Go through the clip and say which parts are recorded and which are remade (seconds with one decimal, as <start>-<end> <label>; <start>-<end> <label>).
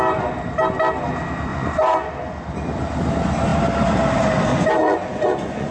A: 0.0-1.5 recorded; 1.5-2.1 remade; 2.1-4.5 recorded; 4.5-5.7 remade